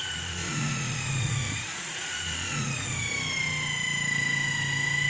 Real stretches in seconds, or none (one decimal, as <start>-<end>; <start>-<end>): 3.1-5.1